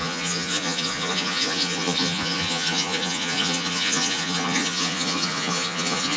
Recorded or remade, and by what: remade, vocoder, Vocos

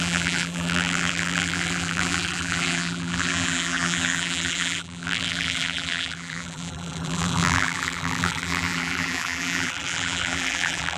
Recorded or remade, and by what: remade, vocoder, BigVGAN v2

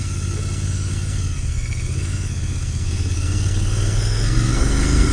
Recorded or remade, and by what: remade, codec, SNAC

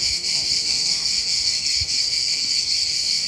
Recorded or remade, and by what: remade, codec, SNAC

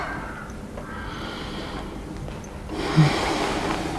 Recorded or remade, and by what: recorded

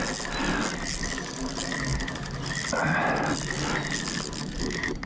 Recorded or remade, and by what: recorded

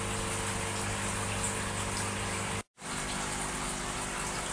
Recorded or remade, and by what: recorded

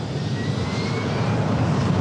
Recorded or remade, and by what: remade, vocoder, BigVGAN v2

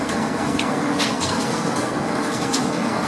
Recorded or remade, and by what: remade, codec, SNAC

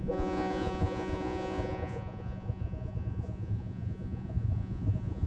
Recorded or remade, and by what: remade, vocoder, Vocos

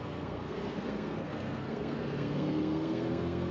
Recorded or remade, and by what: remade, codec, SNAC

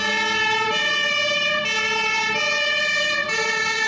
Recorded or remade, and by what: recorded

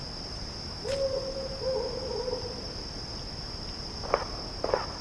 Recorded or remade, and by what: recorded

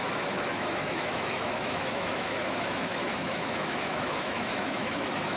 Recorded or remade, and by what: remade, autoencoder, DAC-VAE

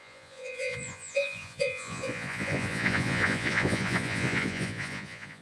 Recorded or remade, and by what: remade, vocoder, Vocos